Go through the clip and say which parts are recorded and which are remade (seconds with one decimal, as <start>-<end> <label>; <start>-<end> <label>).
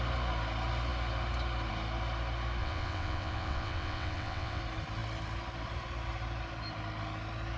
0.0-2.6 recorded; 2.6-4.6 remade; 4.6-7.6 recorded